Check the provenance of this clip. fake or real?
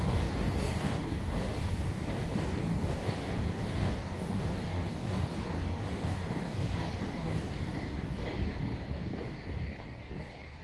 fake